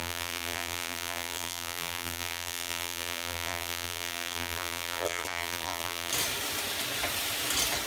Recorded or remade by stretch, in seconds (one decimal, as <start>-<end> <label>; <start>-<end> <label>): 0.0-6.1 remade; 6.1-7.9 recorded